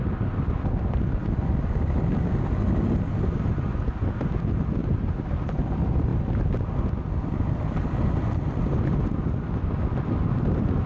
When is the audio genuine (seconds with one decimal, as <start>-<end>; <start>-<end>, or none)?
0.0-4.8; 5.3-10.9